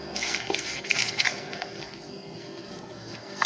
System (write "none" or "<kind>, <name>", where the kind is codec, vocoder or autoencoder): codec, SNAC